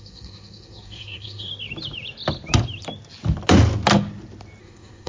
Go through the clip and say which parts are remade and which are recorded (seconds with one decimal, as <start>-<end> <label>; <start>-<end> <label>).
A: 0.0-1.5 remade; 1.5-4.6 recorded; 4.6-5.1 remade

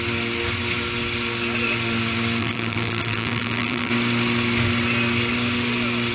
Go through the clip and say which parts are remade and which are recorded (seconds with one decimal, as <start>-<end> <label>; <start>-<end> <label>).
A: 0.0-2.4 recorded; 2.4-3.9 remade; 3.9-6.1 recorded